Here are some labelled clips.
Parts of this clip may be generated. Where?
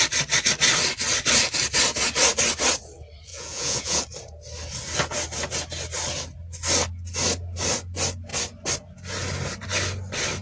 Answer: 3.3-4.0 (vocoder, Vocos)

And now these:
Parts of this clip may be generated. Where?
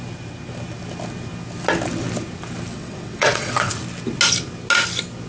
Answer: 2.7-3.7 (vocoder, WaveNeXt)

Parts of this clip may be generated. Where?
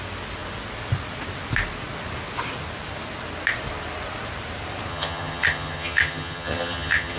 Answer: 4.9-7.2 (vocoder, HiFi-GAN)